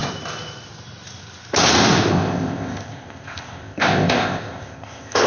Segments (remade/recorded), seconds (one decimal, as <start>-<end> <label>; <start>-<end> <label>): 0.0-2.1 recorded; 2.1-5.3 remade